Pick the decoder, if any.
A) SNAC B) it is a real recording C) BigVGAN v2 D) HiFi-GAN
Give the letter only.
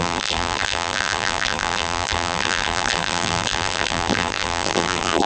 C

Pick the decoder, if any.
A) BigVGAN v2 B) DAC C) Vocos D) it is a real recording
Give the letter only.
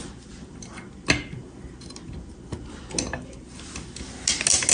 D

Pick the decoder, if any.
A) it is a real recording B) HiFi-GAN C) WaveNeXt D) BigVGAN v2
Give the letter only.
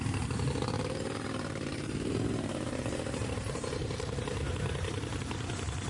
D